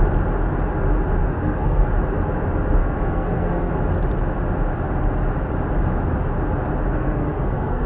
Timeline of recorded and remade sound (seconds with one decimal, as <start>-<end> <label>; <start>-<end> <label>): 0.0-1.2 recorded; 1.2-1.9 remade; 1.9-2.8 recorded; 2.8-3.7 remade; 3.7-6.9 recorded; 6.9-7.9 remade